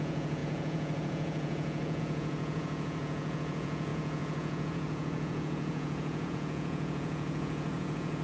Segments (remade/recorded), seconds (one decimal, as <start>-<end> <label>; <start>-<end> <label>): 0.0-8.2 remade